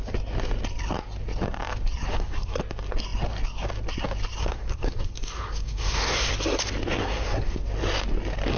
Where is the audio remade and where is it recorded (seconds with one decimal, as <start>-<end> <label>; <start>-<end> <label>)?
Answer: 0.0-2.1 recorded; 2.1-2.6 remade; 2.6-4.4 recorded; 4.4-6.3 remade; 6.3-7.0 recorded; 7.0-7.6 remade; 7.6-8.6 recorded